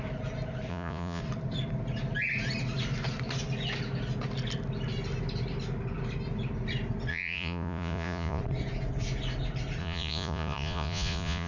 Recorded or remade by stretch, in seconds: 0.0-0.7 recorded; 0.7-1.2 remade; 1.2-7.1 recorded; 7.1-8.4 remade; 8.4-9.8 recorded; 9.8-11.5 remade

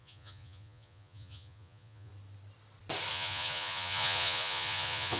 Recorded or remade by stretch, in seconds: 0.0-2.1 remade; 2.1-3.1 recorded; 3.1-5.2 remade

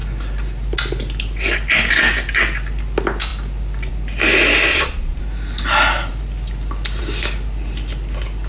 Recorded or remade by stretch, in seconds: 0.0-4.7 recorded; 4.7-5.2 remade; 5.2-8.5 recorded

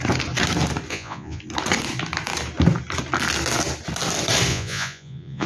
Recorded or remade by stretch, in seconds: 0.0-0.9 recorded; 0.9-1.4 remade; 1.4-4.5 recorded; 4.5-5.5 remade

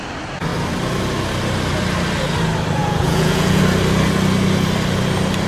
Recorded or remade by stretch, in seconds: 0.0-2.8 recorded; 2.8-3.6 remade; 3.6-5.5 recorded